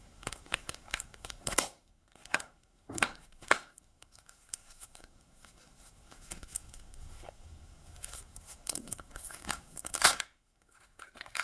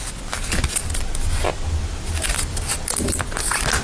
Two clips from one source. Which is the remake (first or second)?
first